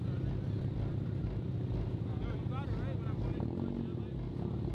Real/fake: real